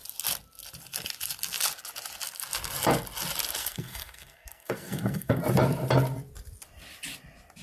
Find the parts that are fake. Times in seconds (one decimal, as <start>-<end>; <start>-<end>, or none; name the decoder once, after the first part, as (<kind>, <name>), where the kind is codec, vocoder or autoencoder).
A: 3.6-5.4 (codec, SNAC)